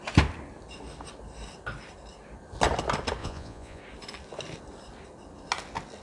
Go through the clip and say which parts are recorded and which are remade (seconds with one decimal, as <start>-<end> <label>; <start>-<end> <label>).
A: 0.0-3.2 recorded; 3.2-3.8 remade; 3.8-6.0 recorded